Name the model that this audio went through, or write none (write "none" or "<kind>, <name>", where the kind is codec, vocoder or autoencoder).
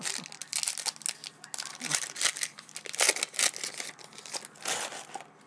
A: none